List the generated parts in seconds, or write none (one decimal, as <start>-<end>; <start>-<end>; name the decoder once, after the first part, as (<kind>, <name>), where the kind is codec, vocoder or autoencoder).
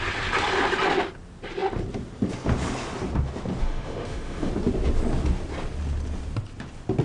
3.6-4.5 (autoencoder, DAC-VAE)